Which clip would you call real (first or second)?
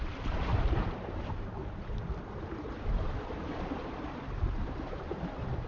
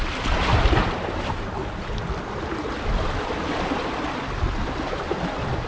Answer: second